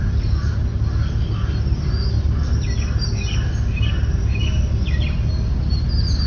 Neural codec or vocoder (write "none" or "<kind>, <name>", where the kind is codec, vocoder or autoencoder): none